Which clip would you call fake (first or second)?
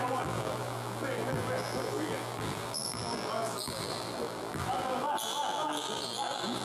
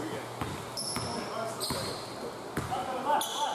first